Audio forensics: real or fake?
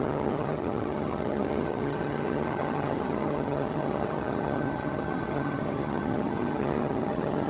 fake